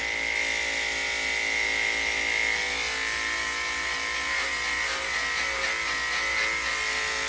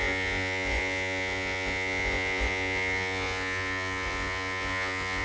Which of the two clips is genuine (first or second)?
first